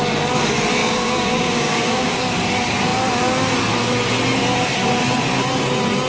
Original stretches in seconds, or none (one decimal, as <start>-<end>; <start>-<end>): 0.0-0.8; 2.2-6.1